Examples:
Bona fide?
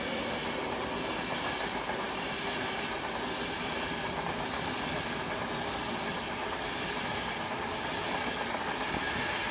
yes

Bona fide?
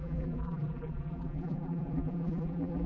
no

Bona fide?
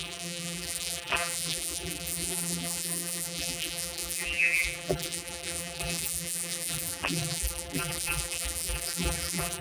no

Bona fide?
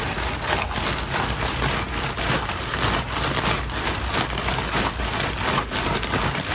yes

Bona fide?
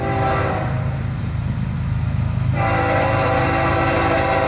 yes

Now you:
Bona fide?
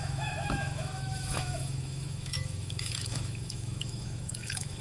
no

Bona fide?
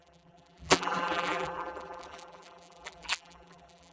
no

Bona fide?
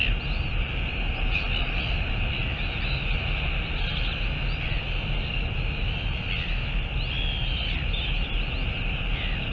yes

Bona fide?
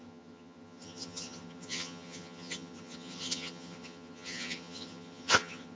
no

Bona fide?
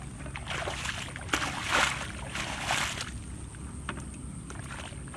yes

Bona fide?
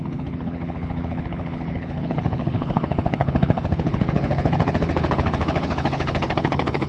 no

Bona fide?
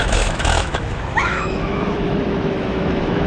no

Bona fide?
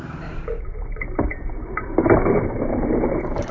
no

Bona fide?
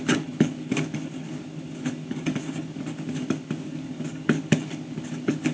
no